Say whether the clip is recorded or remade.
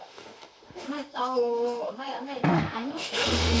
remade